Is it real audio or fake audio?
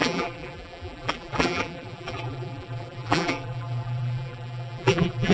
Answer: fake